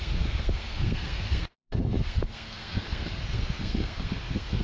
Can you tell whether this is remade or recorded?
remade